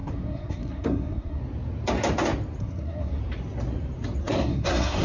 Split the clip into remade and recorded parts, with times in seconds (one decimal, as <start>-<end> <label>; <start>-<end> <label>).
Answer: 0.0-1.4 remade; 1.4-2.6 recorded; 2.6-3.2 remade; 3.2-4.2 recorded; 4.2-5.0 remade